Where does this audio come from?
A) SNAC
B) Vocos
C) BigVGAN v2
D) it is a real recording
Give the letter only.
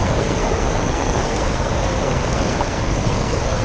A